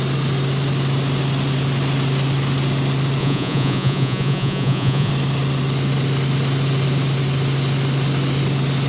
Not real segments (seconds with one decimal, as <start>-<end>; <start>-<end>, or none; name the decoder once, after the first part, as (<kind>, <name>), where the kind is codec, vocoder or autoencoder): 3.2-5.1 (vocoder, Vocos)